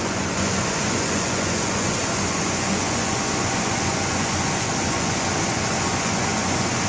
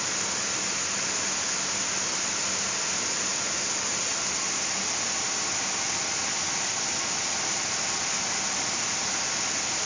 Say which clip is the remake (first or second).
first